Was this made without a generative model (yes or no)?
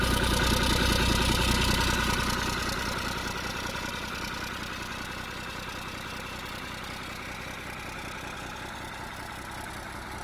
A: yes